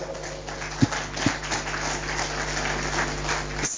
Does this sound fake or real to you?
real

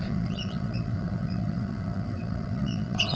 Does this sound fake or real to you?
fake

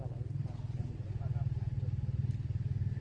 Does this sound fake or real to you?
real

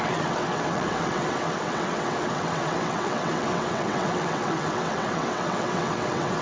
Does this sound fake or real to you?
fake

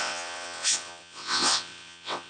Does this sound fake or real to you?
fake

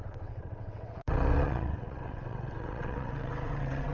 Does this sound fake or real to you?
fake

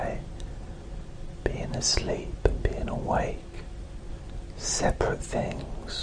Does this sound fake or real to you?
real